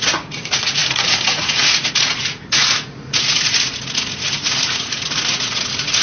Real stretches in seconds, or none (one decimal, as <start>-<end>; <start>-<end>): none